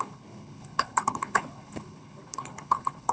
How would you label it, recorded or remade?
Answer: remade